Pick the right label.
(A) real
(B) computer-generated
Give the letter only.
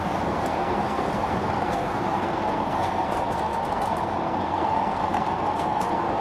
B